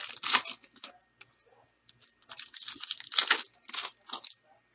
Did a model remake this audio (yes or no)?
no